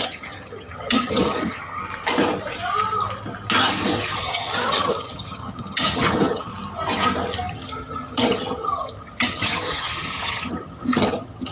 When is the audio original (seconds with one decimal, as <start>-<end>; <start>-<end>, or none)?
1.8-4.2; 6.5-7.5